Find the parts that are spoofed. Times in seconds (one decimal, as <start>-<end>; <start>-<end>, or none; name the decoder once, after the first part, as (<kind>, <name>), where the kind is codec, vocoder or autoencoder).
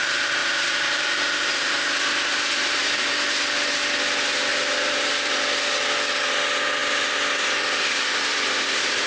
0.4-3.1 (vocoder, BigVGAN v2); 4.5-5.0; 6.8-7.3